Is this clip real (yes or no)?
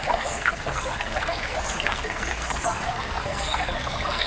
no